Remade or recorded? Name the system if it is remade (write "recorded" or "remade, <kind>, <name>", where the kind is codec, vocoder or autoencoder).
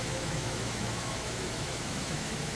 remade, autoencoder, DAC-VAE